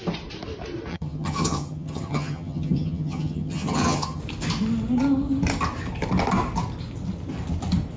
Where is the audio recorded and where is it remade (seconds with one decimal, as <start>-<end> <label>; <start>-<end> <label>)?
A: 0.0-0.9 recorded; 0.9-4.2 remade; 4.2-8.0 recorded